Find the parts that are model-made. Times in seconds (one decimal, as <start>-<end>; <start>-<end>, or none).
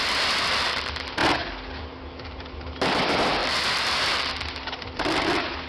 0.0-1.2; 2.4-5.7